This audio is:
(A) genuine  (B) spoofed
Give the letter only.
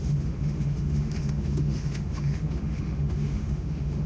B